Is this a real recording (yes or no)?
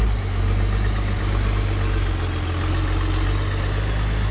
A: yes